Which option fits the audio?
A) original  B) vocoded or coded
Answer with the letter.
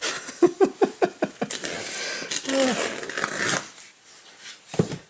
A